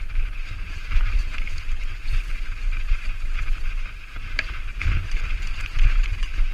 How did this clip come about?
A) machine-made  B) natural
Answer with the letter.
A